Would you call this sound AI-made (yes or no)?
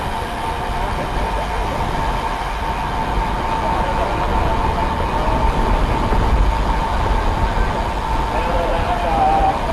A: no